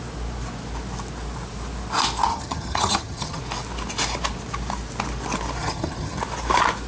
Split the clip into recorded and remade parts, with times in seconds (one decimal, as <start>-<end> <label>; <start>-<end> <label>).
0.0-2.3 recorded; 2.3-3.4 remade; 3.4-5.6 recorded; 5.6-6.2 remade; 6.2-6.9 recorded